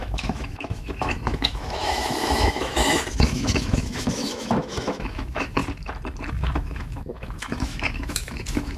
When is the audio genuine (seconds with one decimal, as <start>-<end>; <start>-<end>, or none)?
5.6-6.3